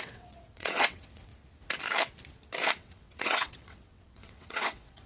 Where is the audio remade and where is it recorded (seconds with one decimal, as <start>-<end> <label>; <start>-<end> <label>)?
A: 0.0-1.3 remade; 1.3-2.7 recorded; 2.7-5.1 remade